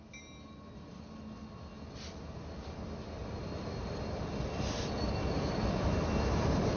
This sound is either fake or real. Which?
real